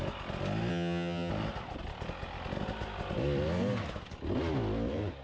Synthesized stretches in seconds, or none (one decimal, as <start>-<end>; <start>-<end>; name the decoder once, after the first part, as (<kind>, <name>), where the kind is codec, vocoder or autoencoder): 0.7-1.3 (vocoder, HiFi-GAN)